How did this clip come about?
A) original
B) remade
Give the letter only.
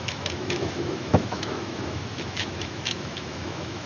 B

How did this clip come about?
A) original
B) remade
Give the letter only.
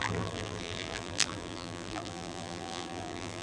B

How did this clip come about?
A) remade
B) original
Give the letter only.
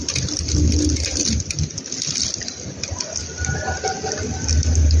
B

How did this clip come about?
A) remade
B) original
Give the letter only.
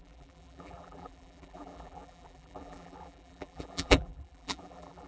A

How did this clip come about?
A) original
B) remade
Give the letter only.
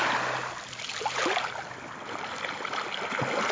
A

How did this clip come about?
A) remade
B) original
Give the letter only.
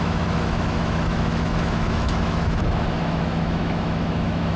A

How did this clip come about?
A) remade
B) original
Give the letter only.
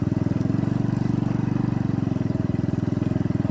B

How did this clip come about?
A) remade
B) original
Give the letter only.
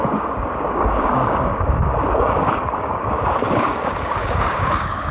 A